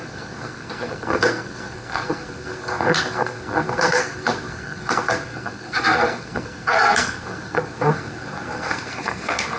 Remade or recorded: remade